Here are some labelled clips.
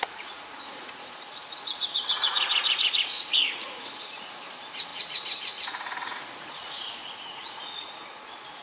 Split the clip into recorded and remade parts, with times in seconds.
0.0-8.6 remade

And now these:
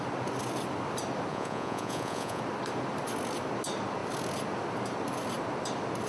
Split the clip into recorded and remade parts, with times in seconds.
0.0-1.3 recorded; 1.3-2.4 remade; 2.4-6.1 recorded

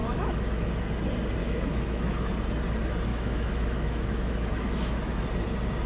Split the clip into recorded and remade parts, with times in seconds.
0.0-0.7 remade; 0.7-1.4 recorded; 1.4-2.3 remade; 2.3-3.1 recorded; 3.1-5.2 remade; 5.2-5.9 recorded

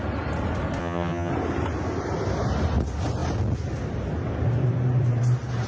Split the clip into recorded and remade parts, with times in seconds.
0.0-0.8 recorded; 0.8-1.3 remade; 1.3-5.7 recorded

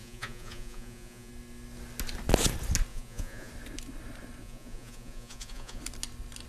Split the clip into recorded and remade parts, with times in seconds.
0.0-1.3 remade; 1.3-2.9 recorded; 2.9-3.5 remade; 3.5-4.4 recorded; 4.4-5.8 remade; 5.8-6.5 recorded

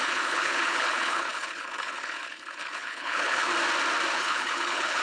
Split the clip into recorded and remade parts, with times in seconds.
0.0-3.5 remade; 3.5-4.1 recorded; 4.1-5.0 remade

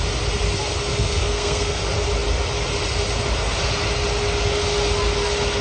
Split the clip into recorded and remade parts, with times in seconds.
0.0-0.9 recorded; 0.9-1.8 remade; 1.8-5.6 recorded

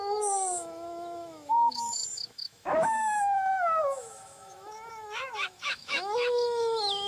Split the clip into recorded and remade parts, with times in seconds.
0.0-7.1 remade